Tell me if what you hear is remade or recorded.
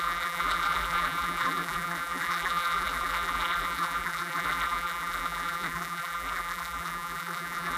remade